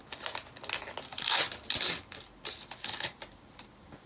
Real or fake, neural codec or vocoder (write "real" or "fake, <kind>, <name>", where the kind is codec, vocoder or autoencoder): real